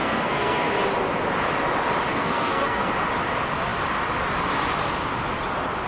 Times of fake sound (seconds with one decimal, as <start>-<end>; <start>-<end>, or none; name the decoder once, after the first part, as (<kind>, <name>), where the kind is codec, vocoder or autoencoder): 0.0-0.7 (codec, SNAC); 2.1-2.9